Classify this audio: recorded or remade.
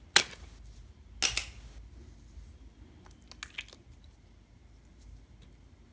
recorded